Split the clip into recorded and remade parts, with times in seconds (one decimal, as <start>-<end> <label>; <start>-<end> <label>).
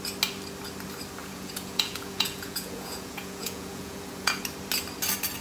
0.0-1.2 recorded; 1.2-4.4 remade; 4.4-5.4 recorded